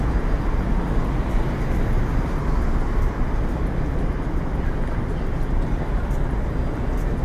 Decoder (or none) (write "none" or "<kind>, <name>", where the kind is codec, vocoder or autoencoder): none